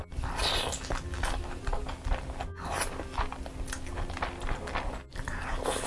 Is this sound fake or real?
real